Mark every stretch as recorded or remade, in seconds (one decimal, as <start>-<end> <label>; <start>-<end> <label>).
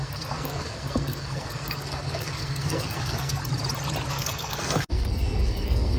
0.0-3.4 remade; 3.4-4.1 recorded; 4.1-6.0 remade